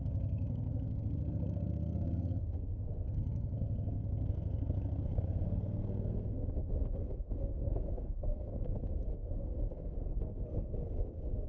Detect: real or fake fake